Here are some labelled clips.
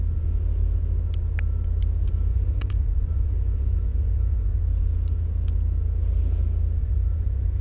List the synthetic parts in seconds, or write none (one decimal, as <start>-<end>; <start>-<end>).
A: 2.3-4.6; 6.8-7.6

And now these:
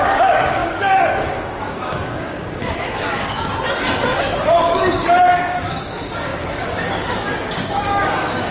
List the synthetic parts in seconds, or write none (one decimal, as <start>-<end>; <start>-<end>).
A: 0.0-3.5; 4.2-8.5

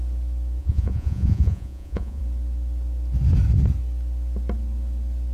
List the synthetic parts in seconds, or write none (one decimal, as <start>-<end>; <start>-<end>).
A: 0.6-2.2